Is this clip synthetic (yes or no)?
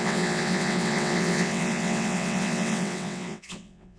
yes